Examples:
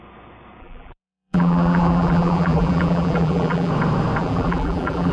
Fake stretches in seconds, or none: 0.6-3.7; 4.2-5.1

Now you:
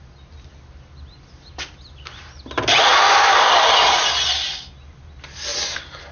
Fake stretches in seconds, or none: none